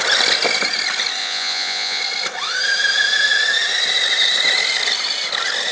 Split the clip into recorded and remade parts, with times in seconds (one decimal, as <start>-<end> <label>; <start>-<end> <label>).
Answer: 0.0-1.2 recorded; 1.2-2.0 remade; 2.0-5.7 recorded